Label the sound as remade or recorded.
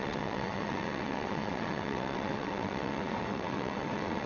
remade